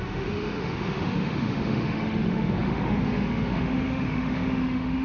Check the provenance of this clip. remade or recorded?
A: remade